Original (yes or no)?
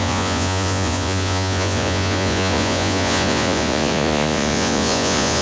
no